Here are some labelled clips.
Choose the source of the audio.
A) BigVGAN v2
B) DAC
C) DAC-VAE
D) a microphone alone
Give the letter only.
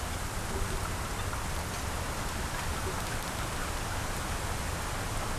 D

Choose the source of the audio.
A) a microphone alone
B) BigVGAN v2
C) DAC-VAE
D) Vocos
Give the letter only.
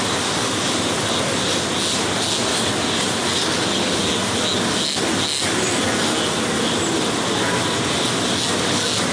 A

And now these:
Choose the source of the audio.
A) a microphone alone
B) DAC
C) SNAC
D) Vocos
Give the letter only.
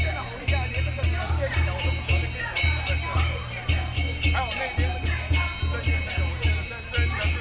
A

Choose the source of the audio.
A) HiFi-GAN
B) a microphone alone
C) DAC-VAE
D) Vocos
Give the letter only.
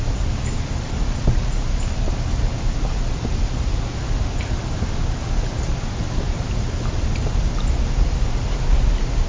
B